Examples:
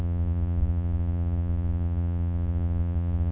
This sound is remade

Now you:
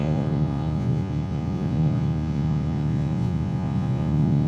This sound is remade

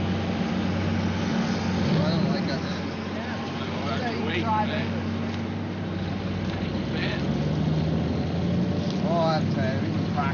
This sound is recorded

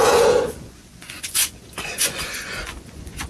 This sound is remade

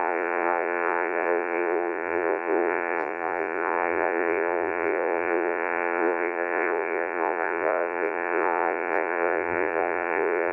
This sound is remade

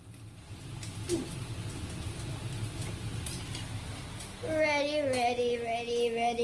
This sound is recorded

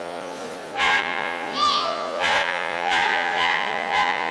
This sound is remade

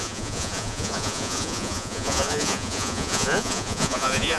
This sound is remade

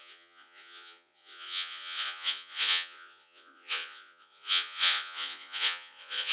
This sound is remade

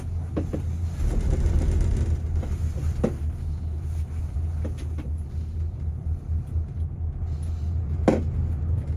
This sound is recorded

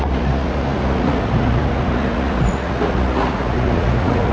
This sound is remade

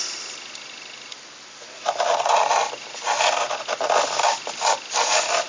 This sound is recorded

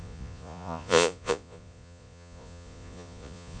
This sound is remade